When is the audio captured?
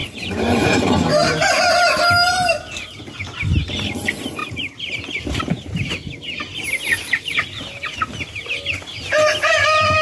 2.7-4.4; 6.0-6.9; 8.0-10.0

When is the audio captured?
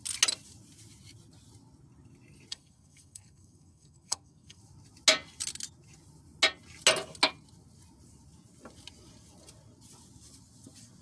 0.0-2.5; 4.6-11.0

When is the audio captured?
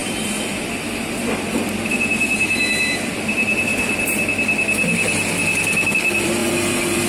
3.7-5.9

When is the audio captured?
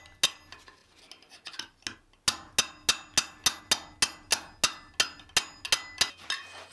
0.0-6.7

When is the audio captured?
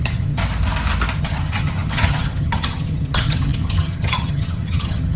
0.4-1.2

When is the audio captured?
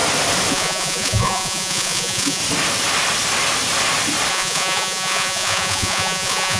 0.0-0.5; 2.4-4.3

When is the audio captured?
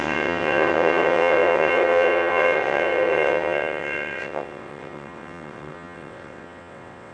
none